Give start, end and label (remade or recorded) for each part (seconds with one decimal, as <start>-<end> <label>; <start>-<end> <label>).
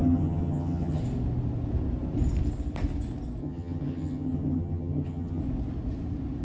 0.0-1.0 remade; 1.0-3.4 recorded; 3.4-5.4 remade; 5.4-6.4 recorded